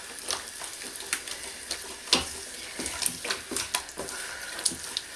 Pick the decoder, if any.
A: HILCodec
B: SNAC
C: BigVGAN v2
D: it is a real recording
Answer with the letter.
D